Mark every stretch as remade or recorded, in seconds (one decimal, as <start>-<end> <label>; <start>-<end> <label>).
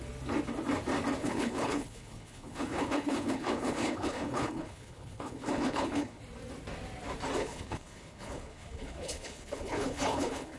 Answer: 0.0-1.2 recorded; 1.2-6.2 remade; 6.2-7.4 recorded; 7.4-10.6 remade